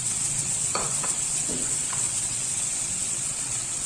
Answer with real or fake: fake